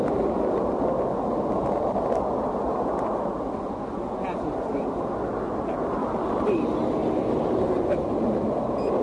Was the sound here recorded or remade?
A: recorded